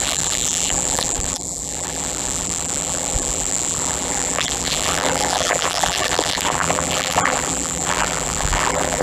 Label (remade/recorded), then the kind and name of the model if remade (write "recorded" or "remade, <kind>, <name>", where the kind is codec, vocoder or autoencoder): remade, vocoder, BigVGAN v2